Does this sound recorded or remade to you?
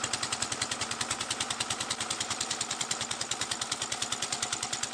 recorded